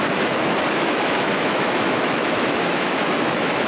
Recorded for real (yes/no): no